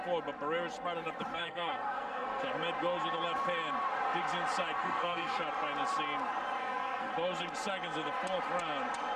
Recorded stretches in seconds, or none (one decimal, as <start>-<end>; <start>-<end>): 0.0-1.3; 2.4-4.8; 5.4-6.6; 7.1-9.2